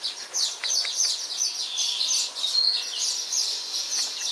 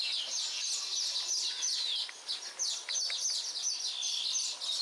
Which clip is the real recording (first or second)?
second